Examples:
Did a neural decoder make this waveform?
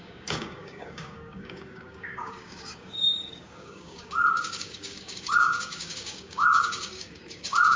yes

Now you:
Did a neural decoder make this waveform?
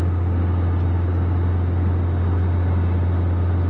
no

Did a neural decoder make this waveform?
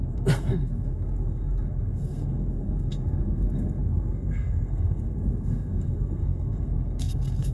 yes